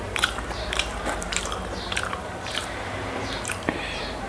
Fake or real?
fake